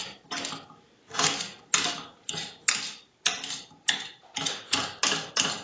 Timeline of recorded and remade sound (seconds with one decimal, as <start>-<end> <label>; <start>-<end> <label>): 0.0-5.6 recorded